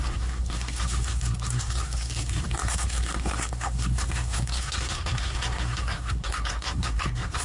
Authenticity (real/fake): fake